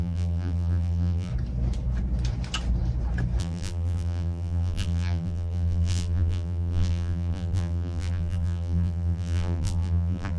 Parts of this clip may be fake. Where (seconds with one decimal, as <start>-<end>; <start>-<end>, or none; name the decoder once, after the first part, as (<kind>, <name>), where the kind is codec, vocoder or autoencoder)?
0.0-1.3 (vocoder, BigVGAN v2); 3.4-10.4